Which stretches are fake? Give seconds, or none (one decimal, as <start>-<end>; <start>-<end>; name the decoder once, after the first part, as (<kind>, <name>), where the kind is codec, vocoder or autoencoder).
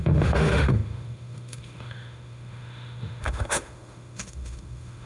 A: 0.0-5.1 (autoencoder, DAC-VAE)